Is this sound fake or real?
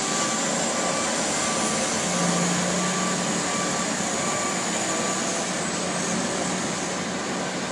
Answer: real